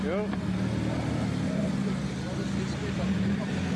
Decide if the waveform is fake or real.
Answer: real